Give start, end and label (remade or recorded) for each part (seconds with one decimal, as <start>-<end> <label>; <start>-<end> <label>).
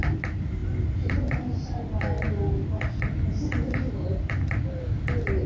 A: 0.0-5.5 recorded